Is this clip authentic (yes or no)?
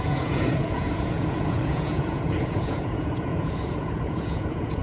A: no